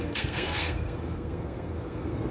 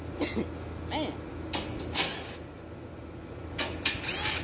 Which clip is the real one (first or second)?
second